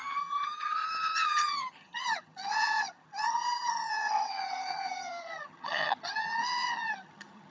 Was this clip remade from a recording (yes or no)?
yes